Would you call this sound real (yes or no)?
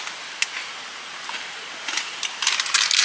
yes